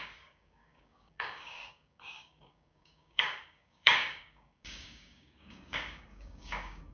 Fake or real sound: fake